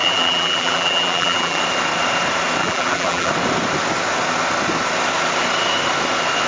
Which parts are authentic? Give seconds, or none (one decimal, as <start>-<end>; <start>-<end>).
1.6-2.6; 3.3-6.5